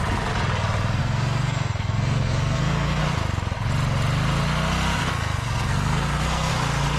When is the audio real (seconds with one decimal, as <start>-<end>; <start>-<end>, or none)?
0.0-1.0; 3.0-5.0; 6.5-7.0